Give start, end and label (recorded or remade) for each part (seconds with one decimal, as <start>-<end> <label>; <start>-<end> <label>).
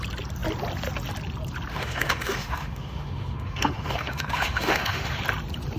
0.0-1.7 recorded; 1.7-5.2 remade; 5.2-5.8 recorded